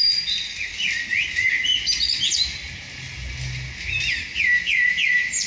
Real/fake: real